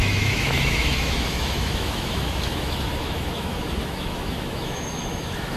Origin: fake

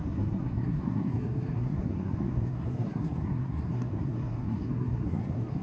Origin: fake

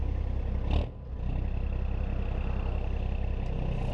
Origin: real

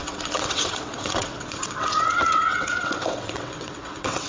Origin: fake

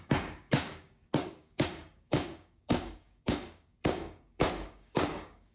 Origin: fake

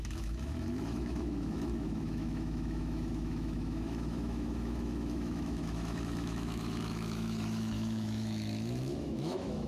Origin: fake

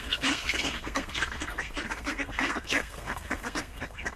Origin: fake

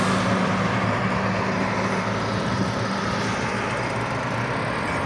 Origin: real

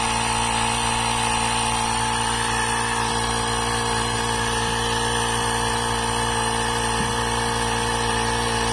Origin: real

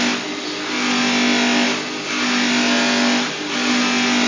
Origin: real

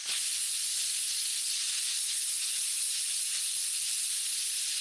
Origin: real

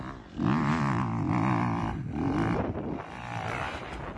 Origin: real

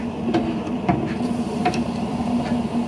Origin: fake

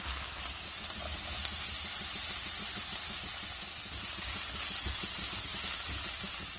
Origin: real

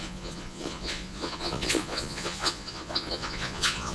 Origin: fake